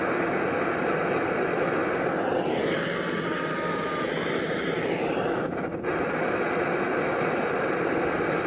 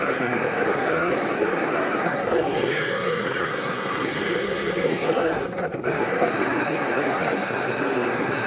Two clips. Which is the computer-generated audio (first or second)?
second